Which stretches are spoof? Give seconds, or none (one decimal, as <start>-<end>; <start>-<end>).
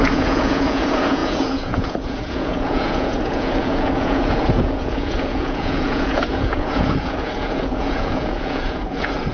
0.0-9.3